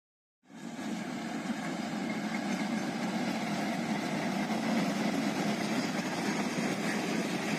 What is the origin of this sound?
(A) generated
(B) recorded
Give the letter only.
B